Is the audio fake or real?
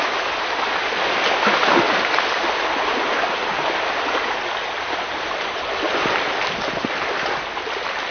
fake